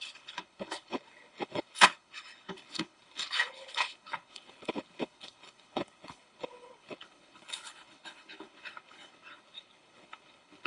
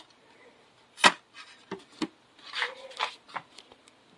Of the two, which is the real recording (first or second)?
second